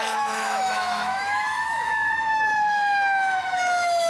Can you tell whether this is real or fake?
fake